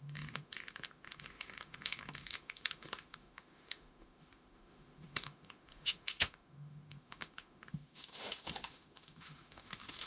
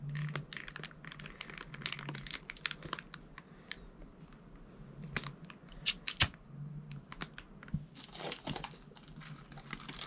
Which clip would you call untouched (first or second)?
second